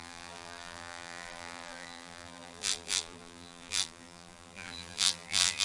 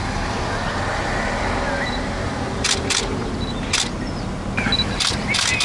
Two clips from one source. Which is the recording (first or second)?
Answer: second